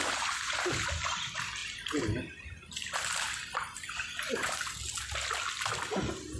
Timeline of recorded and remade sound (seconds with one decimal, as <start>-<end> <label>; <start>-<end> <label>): 0.0-6.4 recorded